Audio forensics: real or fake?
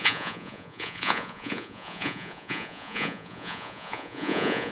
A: fake